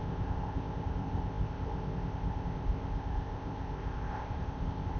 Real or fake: fake